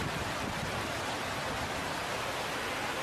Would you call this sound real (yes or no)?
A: yes